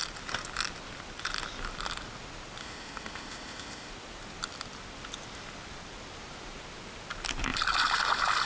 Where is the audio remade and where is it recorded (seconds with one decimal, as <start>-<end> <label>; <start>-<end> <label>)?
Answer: 0.0-2.6 recorded; 2.6-3.9 remade; 3.9-8.5 recorded